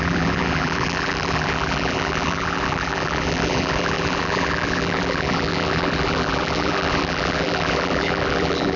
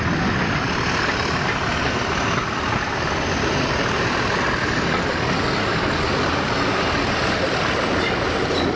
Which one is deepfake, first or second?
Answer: first